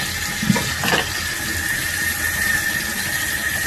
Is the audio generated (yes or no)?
no